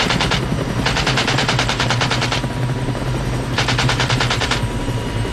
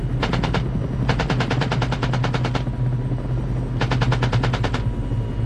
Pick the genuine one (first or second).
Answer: second